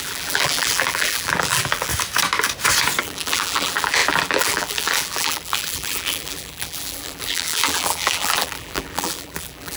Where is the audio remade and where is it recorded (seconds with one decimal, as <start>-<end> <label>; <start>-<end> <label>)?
0.0-1.9 remade; 1.9-3.0 recorded; 3.0-9.8 remade